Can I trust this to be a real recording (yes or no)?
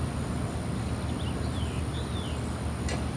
yes